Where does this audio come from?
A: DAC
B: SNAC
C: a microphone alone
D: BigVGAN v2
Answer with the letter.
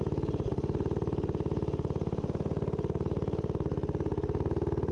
C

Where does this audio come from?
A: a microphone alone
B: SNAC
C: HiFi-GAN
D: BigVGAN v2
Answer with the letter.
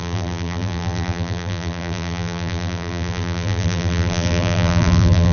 D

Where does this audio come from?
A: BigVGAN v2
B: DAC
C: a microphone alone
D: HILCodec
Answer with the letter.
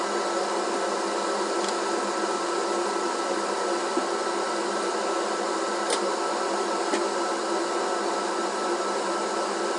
C